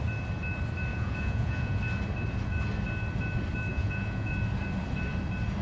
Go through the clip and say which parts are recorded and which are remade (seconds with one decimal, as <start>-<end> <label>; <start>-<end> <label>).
0.0-0.9 recorded; 0.9-1.8 remade; 1.8-3.7 recorded; 3.7-4.3 remade; 4.3-5.6 recorded